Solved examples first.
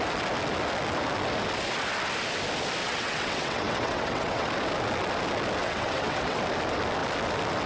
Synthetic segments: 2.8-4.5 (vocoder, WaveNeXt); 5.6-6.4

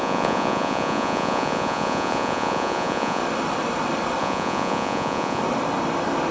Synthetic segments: 0.0-3.2 (vocoder, Vocos); 4.2-5.4

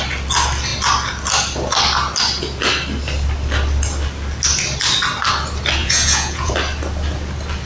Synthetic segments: 5.8-6.5 (vocoder, Vocos)

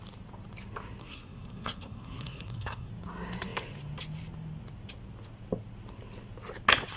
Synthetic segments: 1.0-2.9 (codec, SNAC)

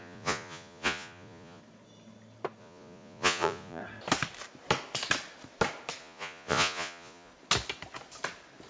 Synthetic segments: 0.0-1.6 (vocoder, Vocos); 2.6-3.8; 6.0-7.3

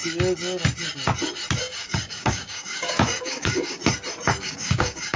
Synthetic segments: 1.6-3.8 (codec, DAC); 4.4-5.2